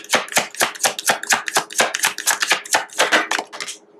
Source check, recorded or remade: recorded